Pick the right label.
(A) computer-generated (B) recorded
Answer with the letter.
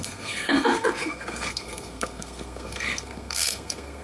A